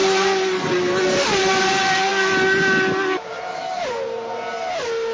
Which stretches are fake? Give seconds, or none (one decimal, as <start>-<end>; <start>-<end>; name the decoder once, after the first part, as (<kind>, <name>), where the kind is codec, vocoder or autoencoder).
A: none